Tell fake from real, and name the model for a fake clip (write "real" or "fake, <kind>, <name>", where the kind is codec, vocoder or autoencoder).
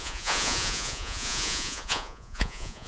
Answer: fake, vocoder, Vocos